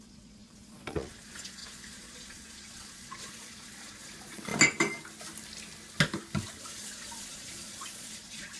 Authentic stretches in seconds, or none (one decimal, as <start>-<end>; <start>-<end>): 4.5-6.6